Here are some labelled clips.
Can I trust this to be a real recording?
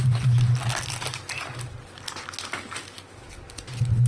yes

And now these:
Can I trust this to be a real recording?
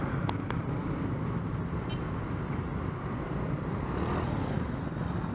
yes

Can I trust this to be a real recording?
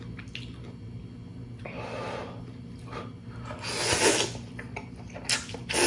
yes